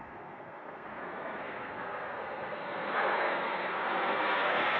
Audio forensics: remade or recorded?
remade